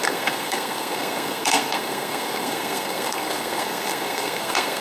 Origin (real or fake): fake